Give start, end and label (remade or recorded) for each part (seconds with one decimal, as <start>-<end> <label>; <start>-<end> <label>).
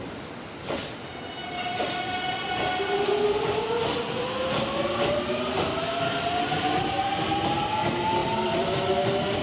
0.0-8.2 recorded; 8.2-9.0 remade; 9.0-9.4 recorded